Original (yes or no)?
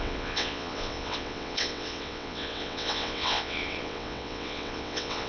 no